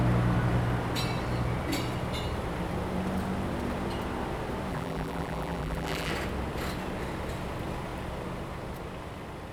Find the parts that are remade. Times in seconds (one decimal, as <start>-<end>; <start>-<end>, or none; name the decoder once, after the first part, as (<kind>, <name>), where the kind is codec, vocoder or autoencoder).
4.7-6.1 (vocoder, BigVGAN v2)